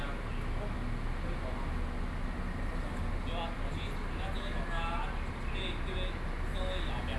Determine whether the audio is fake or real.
real